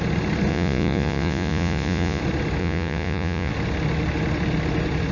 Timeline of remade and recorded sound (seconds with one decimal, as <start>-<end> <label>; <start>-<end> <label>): 0.0-0.5 recorded; 0.5-2.2 remade; 2.2-2.6 recorded; 2.6-3.5 remade; 3.5-5.1 recorded